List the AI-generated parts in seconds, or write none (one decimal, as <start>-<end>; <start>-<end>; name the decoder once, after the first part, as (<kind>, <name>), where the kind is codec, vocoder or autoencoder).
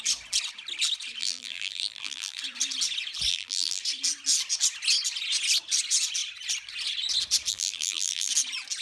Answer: 1.2-2.4 (vocoder, BigVGAN v2); 3.3-3.8; 7.5-8.3